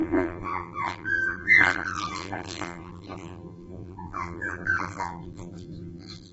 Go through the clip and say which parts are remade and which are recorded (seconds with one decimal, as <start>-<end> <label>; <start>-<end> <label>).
0.0-6.3 remade